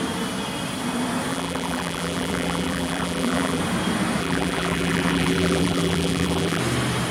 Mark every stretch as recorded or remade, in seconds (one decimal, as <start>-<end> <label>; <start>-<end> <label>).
0.0-1.3 recorded; 1.3-3.6 remade; 3.6-4.2 recorded; 4.2-6.6 remade; 6.6-7.1 recorded